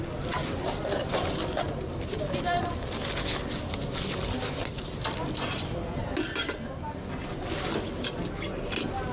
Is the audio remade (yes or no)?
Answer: no